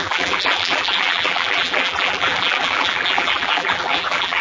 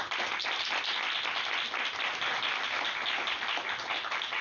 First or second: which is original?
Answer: second